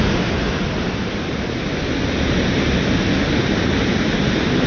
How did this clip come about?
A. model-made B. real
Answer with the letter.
B